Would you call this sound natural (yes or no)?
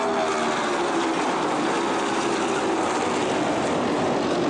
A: yes